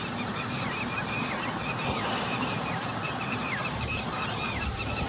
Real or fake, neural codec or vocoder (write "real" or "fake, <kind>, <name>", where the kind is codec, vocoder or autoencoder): fake, vocoder, BigVGAN v2